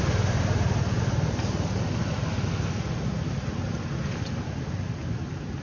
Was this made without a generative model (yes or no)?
yes